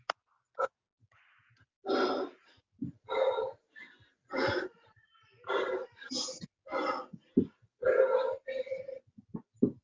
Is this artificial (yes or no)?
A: no